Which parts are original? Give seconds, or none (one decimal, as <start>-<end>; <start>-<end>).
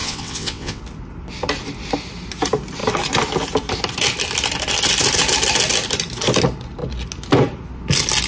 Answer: 0.8-8.3